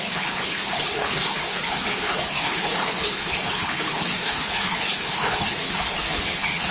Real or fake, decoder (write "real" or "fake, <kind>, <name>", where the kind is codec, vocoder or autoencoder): fake, codec, HILCodec